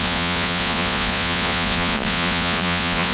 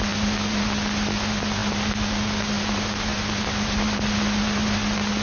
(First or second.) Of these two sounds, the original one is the second